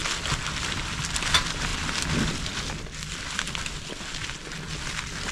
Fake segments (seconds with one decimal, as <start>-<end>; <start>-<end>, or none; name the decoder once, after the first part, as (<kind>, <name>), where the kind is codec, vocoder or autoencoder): 1.2-1.7 (vocoder, BigVGAN v2)